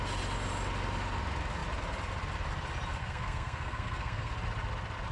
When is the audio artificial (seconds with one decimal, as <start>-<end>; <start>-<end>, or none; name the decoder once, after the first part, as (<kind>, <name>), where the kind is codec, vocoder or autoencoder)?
3.0-4.3 (codec, SNAC)